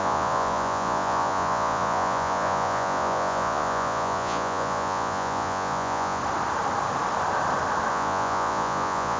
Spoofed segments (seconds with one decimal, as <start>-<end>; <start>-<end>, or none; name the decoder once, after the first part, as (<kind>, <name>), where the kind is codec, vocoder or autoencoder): 0.0-6.2 (vocoder, Vocos); 7.9-9.2